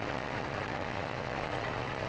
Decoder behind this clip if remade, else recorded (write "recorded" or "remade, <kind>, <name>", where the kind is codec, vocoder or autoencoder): remade, vocoder, Vocos